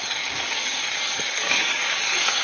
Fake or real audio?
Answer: fake